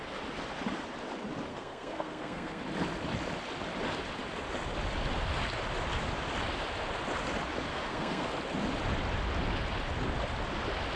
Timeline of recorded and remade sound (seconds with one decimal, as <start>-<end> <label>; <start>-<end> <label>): 0.0-1.5 recorded; 1.5-2.6 remade; 2.6-7.7 recorded; 7.7-8.3 remade; 8.3-11.0 recorded